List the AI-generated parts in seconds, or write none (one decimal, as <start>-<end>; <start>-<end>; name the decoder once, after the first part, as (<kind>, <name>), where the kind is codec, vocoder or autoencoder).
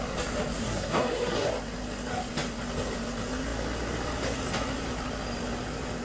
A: 0.6-1.5 (codec, SNAC)